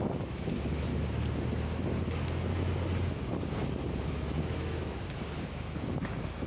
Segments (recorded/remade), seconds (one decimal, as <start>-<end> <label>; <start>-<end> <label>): 0.0-0.9 remade; 0.9-4.1 recorded; 4.1-6.5 remade